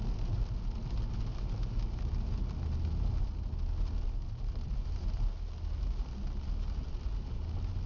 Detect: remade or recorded recorded